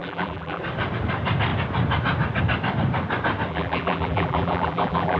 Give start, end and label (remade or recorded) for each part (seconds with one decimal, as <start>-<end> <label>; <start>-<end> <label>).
0.0-0.6 remade; 0.6-3.5 recorded; 3.5-5.2 remade